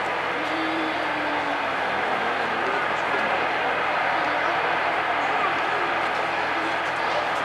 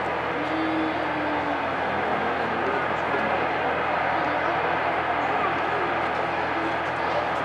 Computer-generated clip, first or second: first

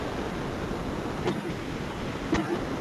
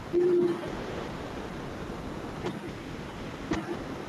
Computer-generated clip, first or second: second